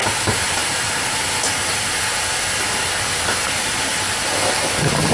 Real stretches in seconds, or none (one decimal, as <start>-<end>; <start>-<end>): 0.0-5.1